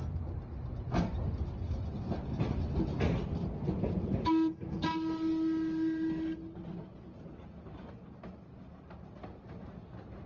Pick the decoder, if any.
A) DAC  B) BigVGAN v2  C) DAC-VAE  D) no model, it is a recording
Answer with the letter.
D